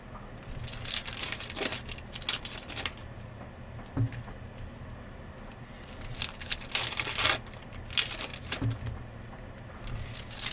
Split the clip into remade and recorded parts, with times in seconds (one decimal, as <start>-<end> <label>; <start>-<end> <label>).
0.0-10.5 recorded